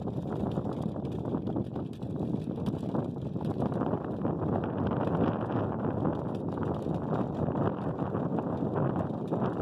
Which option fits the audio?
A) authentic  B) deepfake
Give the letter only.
A